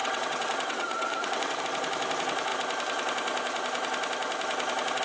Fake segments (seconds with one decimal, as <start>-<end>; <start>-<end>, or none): 0.0-1.6